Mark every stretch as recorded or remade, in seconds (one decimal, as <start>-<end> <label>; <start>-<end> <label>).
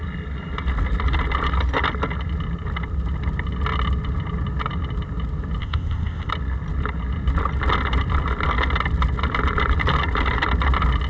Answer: 0.0-5.6 recorded; 5.6-6.3 remade; 6.3-11.1 recorded